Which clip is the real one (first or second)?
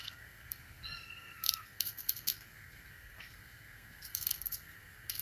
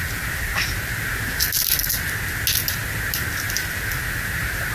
second